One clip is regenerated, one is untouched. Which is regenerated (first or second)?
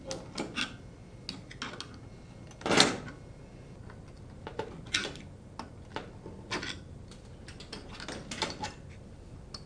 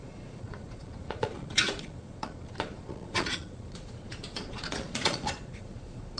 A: second